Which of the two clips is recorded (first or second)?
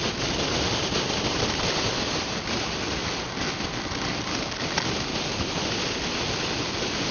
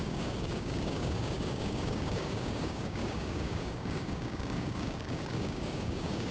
first